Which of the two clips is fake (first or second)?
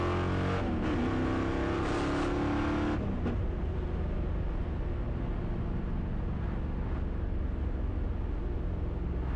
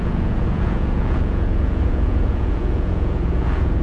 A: second